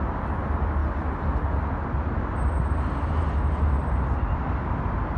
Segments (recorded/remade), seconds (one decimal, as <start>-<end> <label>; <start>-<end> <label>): 0.0-5.2 recorded